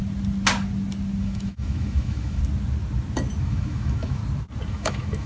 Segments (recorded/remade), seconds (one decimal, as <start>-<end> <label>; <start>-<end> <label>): 0.0-1.2 recorded; 1.2-2.4 remade; 2.4-3.4 recorded; 3.4-4.2 remade; 4.2-4.7 recorded; 4.7-5.3 remade

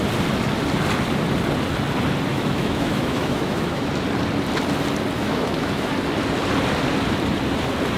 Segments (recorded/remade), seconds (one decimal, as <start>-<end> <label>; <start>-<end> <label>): 0.0-2.3 recorded; 2.3-3.9 remade; 3.9-5.2 recorded; 5.2-5.9 remade; 5.9-8.0 recorded

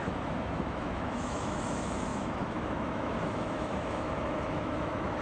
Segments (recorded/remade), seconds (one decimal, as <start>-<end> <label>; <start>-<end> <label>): 0.0-5.2 remade

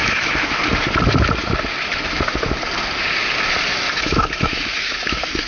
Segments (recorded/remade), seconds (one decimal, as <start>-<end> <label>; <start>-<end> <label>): 0.0-0.6 remade; 0.6-3.9 recorded; 3.9-5.5 remade

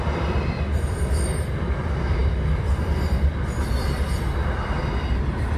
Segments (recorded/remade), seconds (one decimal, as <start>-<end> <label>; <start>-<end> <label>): 0.0-5.6 recorded